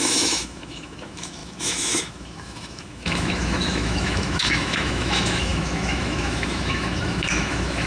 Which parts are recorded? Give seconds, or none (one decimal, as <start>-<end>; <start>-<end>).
none